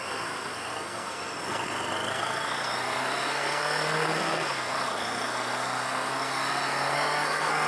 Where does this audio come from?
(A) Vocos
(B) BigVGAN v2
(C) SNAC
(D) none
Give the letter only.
C